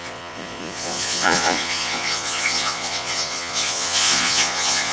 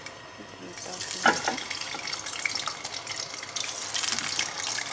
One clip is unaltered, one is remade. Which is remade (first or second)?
first